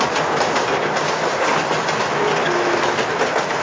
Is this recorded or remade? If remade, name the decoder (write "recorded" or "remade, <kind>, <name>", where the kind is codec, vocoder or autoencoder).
recorded